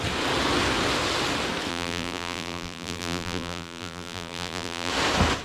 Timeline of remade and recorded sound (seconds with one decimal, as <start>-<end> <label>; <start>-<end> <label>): 0.0-1.7 recorded; 1.7-4.9 remade; 4.9-5.4 recorded